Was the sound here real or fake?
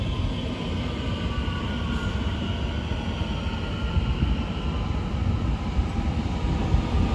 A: real